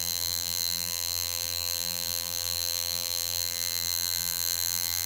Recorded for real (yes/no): no